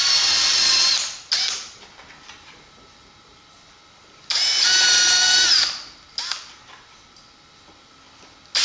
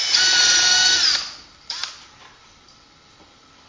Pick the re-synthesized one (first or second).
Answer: second